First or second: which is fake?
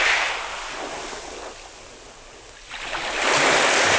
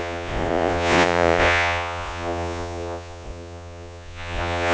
second